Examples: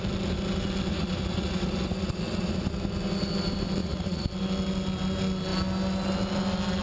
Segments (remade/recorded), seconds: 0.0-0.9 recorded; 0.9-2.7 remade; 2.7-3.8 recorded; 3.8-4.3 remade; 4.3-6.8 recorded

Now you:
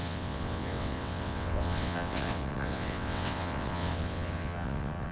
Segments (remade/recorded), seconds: 0.0-5.1 remade

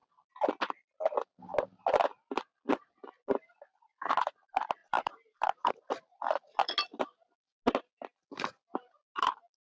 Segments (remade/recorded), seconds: 0.0-4.8 recorded; 4.8-5.7 remade; 5.7-9.6 recorded

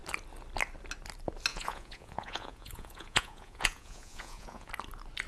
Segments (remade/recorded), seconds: 0.0-1.5 recorded; 1.5-4.7 remade; 4.7-5.3 recorded

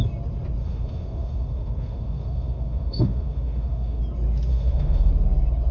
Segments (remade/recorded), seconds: 0.0-0.6 recorded; 0.6-4.0 remade; 4.0-4.5 recorded; 4.5-5.1 remade; 5.1-5.7 recorded

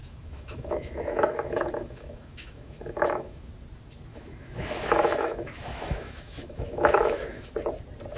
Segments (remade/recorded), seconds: 0.0-3.5 remade; 3.5-4.1 recorded; 4.1-7.5 remade; 7.5-8.2 recorded

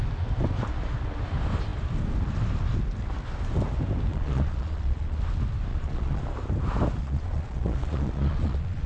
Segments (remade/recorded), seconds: 0.0-4.1 recorded; 4.1-5.2 remade; 5.2-5.7 recorded; 5.7-6.2 remade; 6.2-7.0 recorded; 7.0-8.9 remade